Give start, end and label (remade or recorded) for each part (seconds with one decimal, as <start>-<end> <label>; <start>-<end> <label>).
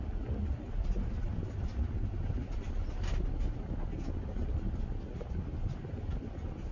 0.0-6.7 recorded